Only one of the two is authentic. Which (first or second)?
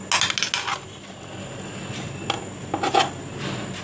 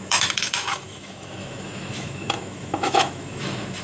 first